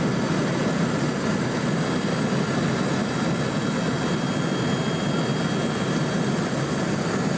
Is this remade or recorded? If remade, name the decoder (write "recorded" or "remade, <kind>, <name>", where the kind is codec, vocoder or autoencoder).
recorded